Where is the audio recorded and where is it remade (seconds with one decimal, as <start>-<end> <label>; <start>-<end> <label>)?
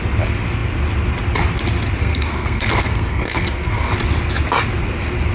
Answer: 0.0-2.0 recorded; 2.0-3.9 remade; 3.9-5.3 recorded